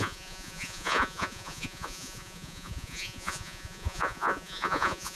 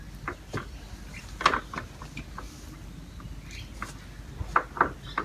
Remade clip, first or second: first